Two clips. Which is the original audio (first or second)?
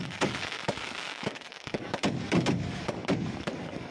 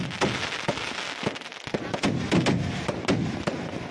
second